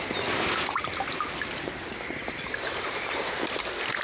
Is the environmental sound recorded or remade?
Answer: recorded